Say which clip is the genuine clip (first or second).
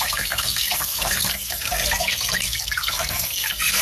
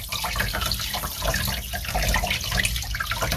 second